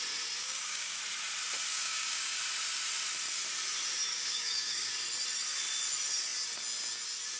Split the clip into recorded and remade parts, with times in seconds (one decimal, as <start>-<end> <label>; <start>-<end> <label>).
0.0-0.4 recorded; 0.4-1.0 remade; 1.0-1.7 recorded; 1.7-2.4 remade; 2.4-4.1 recorded; 4.1-4.9 remade; 4.9-7.4 recorded